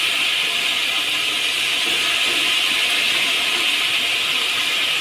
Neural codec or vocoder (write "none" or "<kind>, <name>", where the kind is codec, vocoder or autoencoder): none